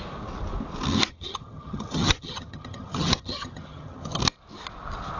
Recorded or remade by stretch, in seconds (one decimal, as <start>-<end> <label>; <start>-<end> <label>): 0.0-1.1 recorded; 1.1-4.2 remade; 4.2-5.2 recorded